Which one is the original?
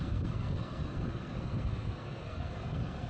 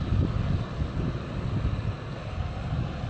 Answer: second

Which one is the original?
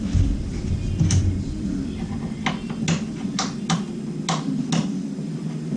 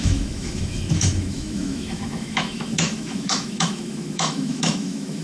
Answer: first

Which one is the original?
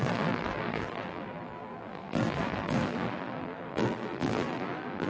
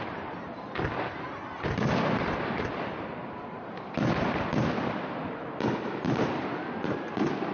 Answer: second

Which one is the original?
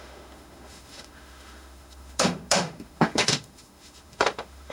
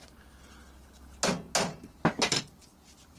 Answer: second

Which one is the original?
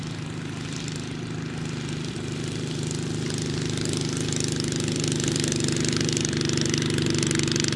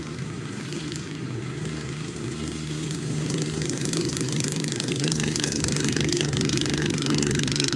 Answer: first